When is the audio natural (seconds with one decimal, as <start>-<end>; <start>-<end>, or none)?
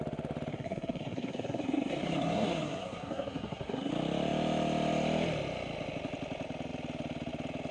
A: 0.0-0.5; 3.9-7.7